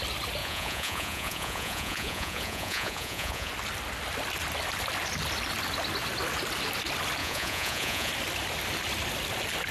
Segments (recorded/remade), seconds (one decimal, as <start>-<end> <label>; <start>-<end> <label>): 0.0-0.4 recorded; 0.4-3.5 remade; 3.5-7.2 recorded; 7.2-8.1 remade; 8.1-9.7 recorded